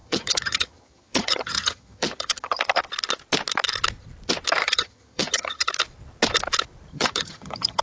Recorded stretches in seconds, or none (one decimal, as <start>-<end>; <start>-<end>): 2.6-4.6; 5.7-6.9